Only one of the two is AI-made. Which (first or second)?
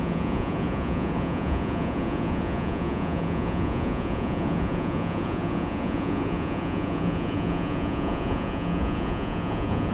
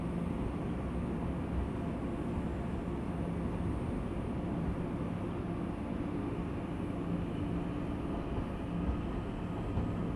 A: first